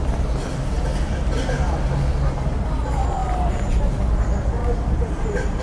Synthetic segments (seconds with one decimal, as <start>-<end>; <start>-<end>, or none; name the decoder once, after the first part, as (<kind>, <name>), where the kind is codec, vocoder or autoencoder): 3.2-4.0 (vocoder, BigVGAN v2); 4.6-5.6